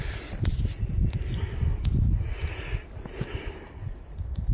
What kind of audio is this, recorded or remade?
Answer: recorded